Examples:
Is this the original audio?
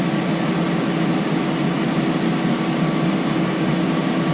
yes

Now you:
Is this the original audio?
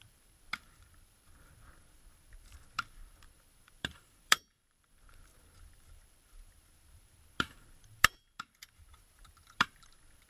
no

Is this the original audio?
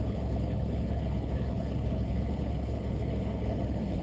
no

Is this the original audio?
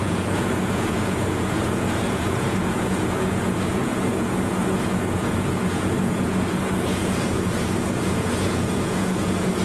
no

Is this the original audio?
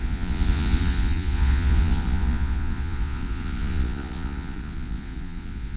no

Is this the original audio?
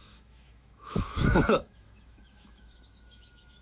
no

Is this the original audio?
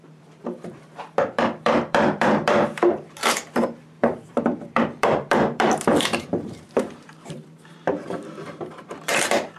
no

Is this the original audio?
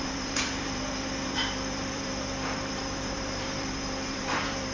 no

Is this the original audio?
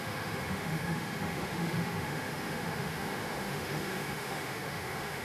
no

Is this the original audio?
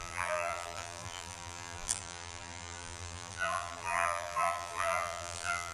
no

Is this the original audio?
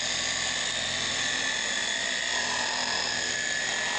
yes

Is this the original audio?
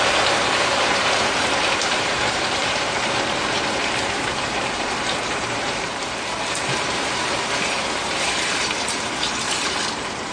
no